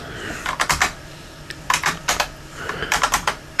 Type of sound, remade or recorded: remade